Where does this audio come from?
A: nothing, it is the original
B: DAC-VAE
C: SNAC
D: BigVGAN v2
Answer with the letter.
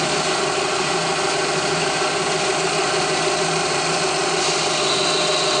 A